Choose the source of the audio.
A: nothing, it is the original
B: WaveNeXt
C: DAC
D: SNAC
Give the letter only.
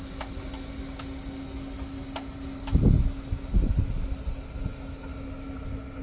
A